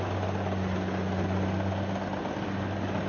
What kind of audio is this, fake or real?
real